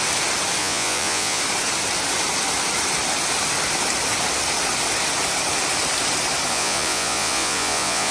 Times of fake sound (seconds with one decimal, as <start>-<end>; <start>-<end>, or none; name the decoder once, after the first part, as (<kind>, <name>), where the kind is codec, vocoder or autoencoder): 0.6-1.4 (vocoder, Vocos); 6.5-8.1

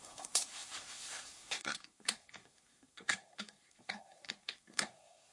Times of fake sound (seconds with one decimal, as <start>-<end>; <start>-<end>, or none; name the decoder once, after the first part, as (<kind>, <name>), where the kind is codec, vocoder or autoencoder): 0.0-5.3 (codec, SNAC)

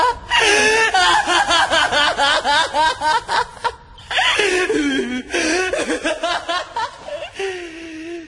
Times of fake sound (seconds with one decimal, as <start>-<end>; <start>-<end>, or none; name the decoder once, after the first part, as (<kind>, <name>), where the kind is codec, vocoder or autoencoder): none

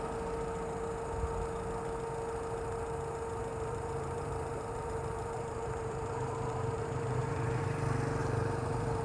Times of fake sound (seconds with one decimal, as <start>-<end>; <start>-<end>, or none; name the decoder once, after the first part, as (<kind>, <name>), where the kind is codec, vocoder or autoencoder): 3.5-7.6 (vocoder, BigVGAN v2); 8.2-9.0

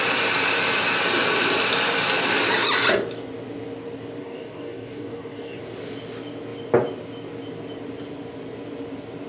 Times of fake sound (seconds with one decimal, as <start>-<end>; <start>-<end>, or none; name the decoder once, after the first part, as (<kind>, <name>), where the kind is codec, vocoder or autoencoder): 4.2-5.6 (codec, DAC)

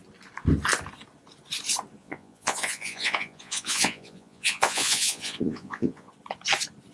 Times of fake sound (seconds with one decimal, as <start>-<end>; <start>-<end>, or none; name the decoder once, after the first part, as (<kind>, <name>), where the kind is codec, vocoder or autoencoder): 2.0-6.1 (vocoder, Vocos)

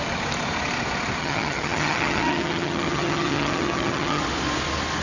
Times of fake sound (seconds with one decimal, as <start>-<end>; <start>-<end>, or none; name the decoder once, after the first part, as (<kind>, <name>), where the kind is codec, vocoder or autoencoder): 1.2-4.2 (vocoder, HiFi-GAN)

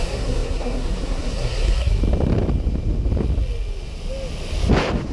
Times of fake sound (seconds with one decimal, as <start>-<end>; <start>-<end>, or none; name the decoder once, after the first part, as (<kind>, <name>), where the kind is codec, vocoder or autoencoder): 0.0-2.0 (codec, SNAC)